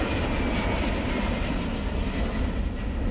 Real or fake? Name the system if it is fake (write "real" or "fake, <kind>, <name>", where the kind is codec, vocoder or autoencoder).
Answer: real